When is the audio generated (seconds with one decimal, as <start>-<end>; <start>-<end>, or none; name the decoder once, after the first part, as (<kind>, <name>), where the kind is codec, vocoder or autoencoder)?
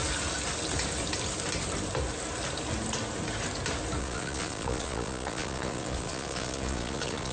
4.0-7.3 (vocoder, Vocos)